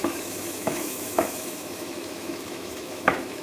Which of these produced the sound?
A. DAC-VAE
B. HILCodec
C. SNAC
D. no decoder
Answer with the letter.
A